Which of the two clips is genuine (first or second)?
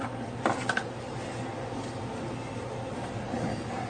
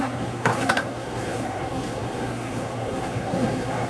first